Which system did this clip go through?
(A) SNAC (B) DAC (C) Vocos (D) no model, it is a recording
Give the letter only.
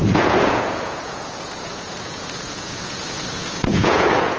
C